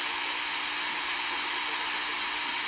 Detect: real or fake real